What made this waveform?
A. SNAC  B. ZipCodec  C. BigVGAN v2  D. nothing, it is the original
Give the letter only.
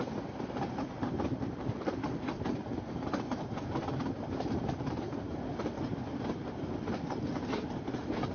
C